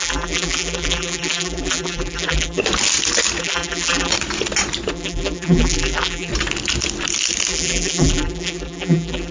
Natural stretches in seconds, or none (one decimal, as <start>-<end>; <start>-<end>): 2.6-3.4; 4.1-4.9; 6.3-7.5